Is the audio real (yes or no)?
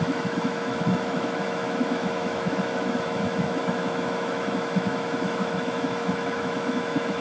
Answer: no